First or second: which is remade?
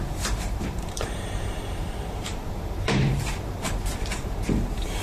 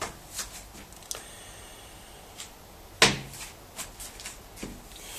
first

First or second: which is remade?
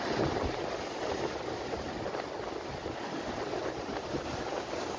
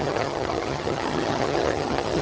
second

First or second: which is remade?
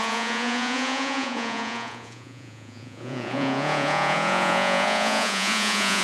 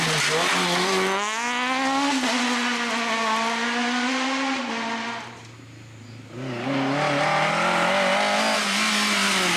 first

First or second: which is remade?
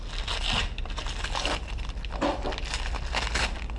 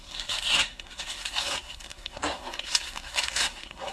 second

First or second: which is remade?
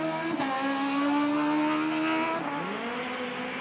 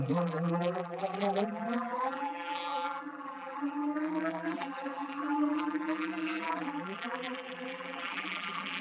second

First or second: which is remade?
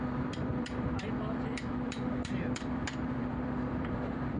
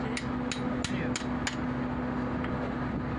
first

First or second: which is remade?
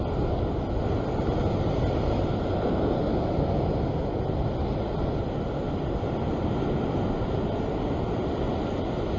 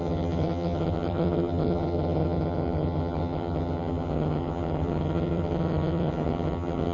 second